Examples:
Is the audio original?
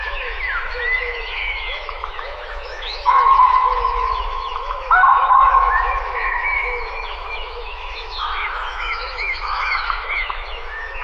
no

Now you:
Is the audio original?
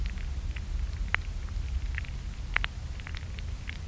yes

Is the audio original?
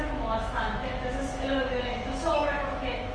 no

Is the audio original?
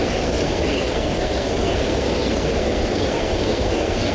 no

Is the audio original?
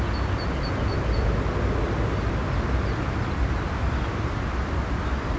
yes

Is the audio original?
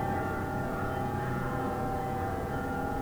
no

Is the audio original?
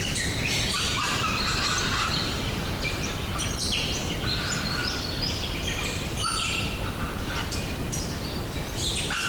no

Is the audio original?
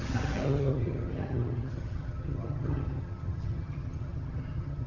no